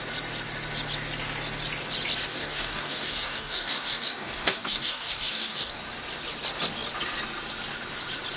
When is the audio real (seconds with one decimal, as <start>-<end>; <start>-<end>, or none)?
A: 0.0-2.3; 5.8-8.4